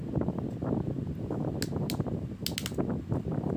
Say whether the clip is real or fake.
real